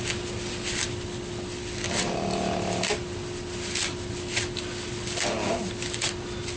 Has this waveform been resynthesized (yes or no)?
no